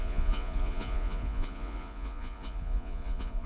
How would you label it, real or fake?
fake